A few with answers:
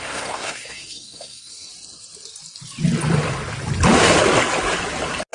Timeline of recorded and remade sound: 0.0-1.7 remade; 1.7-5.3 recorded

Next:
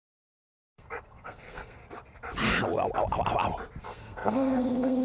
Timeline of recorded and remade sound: 0.0-1.8 remade; 1.8-3.8 recorded; 3.8-5.0 remade